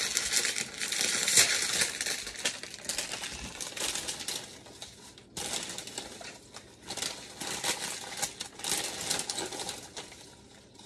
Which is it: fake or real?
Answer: real